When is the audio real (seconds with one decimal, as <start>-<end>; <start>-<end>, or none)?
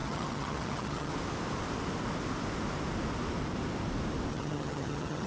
1.1-4.3